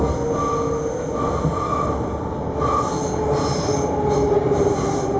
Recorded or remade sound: recorded